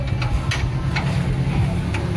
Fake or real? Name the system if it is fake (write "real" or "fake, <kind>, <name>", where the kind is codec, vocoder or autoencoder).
real